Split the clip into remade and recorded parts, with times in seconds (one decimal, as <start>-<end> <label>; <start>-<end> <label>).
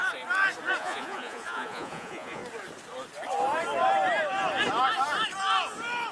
0.0-0.8 recorded; 0.8-2.4 remade; 2.4-6.1 recorded